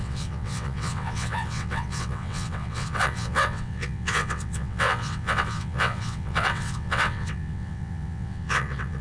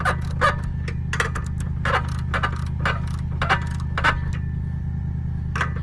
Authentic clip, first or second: second